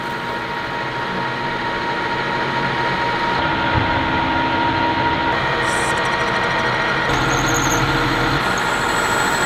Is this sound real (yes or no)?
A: yes